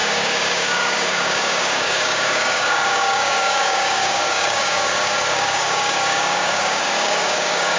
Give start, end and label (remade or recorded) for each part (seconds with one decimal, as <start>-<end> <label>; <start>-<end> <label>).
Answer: 0.0-7.8 remade